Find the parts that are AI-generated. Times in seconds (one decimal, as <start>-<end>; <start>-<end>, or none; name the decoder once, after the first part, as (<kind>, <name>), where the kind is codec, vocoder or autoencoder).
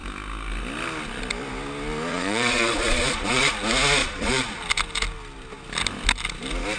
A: 2.1-3.5 (vocoder, Vocos); 4.0-4.6